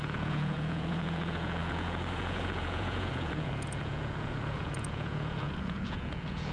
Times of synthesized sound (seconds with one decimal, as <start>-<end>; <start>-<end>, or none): 0.0-6.5